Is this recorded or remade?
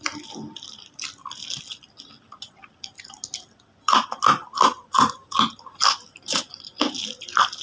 recorded